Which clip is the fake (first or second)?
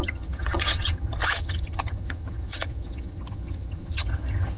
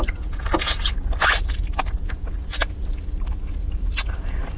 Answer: first